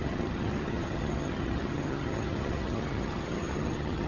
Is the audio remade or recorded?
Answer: remade